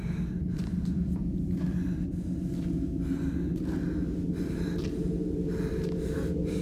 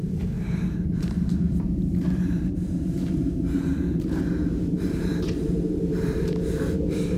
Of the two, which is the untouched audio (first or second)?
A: first